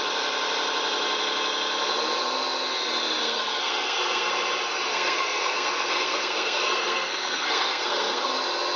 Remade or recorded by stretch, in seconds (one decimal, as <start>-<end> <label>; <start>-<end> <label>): 0.0-3.2 recorded; 3.2-4.3 remade; 4.3-4.9 recorded; 4.9-8.3 remade; 8.3-8.8 recorded